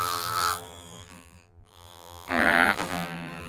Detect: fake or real fake